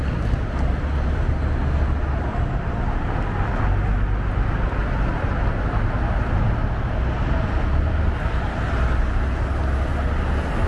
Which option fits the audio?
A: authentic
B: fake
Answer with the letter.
A